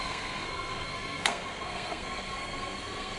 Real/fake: fake